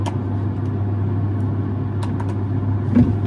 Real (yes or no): yes